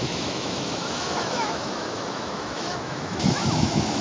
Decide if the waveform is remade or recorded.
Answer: remade